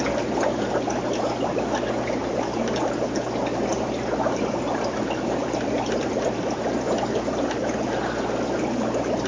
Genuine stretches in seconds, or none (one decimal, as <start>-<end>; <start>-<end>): 0.0-2.2; 2.9-3.7; 6.6-9.3